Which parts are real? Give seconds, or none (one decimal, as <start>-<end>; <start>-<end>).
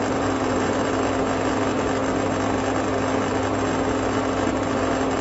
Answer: 0.7-5.2